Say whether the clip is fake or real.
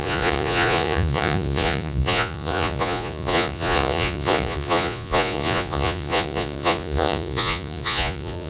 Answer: fake